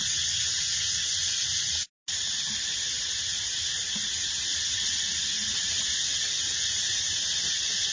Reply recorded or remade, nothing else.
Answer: recorded